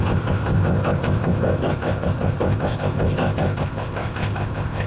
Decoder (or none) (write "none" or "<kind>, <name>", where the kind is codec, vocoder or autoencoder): codec, ZipCodec